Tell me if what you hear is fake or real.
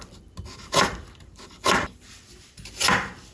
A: real